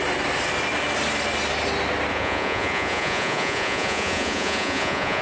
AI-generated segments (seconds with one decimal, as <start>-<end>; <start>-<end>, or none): 2.1-5.2